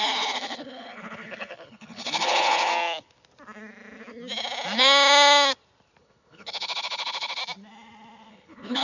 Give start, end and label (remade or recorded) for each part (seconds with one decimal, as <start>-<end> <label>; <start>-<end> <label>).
0.0-2.7 remade; 2.7-6.0 recorded; 6.0-7.4 remade; 7.4-8.3 recorded; 8.3-8.8 remade